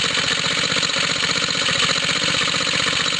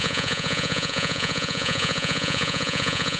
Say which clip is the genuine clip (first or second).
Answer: first